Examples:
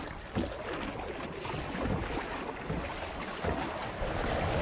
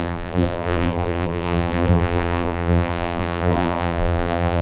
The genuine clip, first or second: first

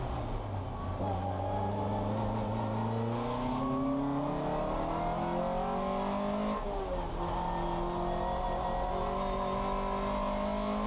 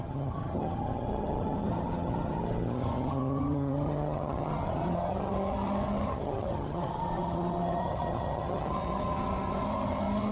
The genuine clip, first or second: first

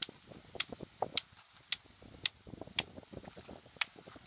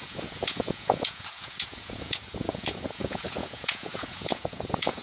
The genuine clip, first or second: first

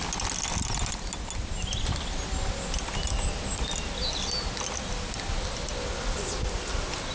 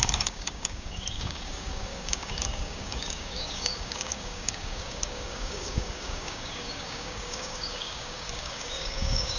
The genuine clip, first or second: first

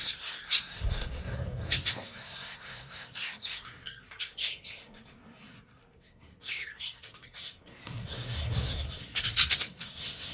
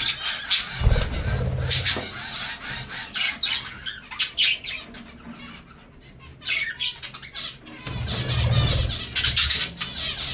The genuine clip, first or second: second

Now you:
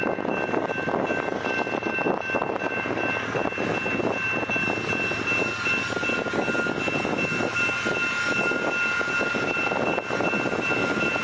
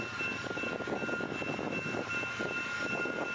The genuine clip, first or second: first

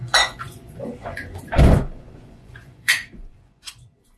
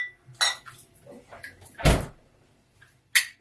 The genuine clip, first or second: second